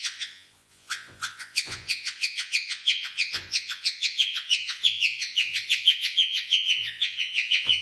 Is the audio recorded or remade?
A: remade